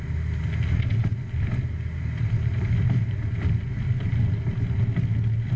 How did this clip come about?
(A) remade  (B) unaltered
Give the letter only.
B